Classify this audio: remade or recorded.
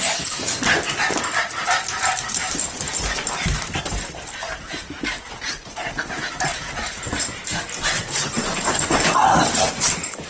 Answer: recorded